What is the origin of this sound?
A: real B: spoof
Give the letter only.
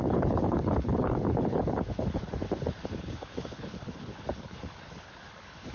B